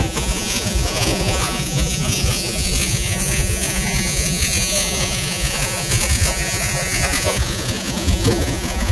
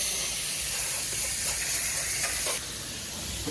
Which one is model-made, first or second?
first